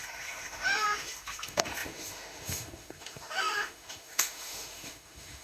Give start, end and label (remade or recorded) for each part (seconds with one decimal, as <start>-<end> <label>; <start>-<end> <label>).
0.0-5.4 remade